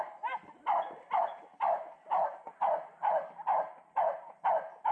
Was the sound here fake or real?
real